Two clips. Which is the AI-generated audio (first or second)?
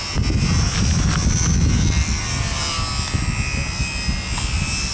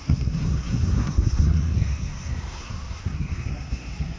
second